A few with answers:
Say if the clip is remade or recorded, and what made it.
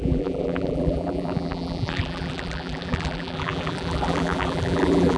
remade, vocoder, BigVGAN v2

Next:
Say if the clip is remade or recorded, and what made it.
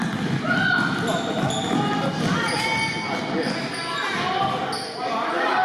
recorded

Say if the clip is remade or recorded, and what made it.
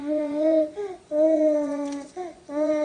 remade, vocoder, Vocos